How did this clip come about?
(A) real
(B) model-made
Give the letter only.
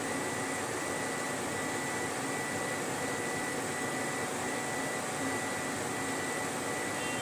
A